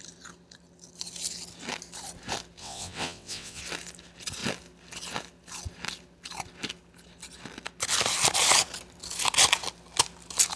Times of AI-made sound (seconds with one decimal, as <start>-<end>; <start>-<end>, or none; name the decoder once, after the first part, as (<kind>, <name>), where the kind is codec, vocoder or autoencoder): 2.6-3.6 (vocoder, WaveNeXt)

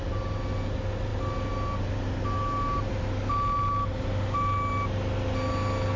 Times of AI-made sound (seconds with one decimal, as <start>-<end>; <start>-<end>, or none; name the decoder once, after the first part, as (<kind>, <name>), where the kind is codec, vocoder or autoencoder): none

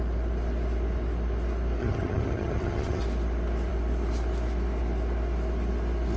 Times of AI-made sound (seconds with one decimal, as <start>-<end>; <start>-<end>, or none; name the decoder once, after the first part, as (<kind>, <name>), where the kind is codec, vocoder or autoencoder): 1.8-3.0 (vocoder, HiFi-GAN)

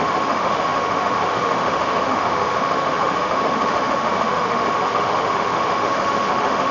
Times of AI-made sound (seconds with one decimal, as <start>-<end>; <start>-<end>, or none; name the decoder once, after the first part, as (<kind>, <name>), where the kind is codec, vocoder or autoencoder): 0.0-6.7 (autoencoder, DAC-VAE)

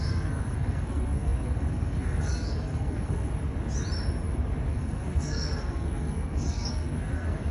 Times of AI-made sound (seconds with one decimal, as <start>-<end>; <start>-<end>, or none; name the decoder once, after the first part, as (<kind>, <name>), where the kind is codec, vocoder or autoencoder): 0.0-3.3 (codec, SNAC); 4.7-7.5

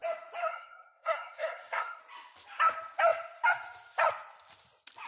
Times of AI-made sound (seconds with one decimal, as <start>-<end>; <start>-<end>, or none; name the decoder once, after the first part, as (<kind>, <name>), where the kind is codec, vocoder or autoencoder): 0.4-2.0 (codec, SNAC)